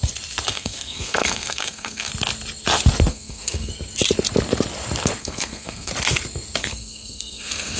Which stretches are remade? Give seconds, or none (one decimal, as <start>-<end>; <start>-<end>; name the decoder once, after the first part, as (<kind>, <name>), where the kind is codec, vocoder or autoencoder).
0.5-2.1 (codec, SNAC); 3.1-3.7; 5.2-5.9; 6.6-7.8